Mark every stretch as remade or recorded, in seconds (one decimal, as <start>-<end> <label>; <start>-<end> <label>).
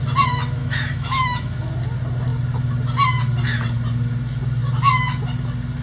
0.0-0.6 recorded; 0.6-1.7 remade; 1.7-5.8 recorded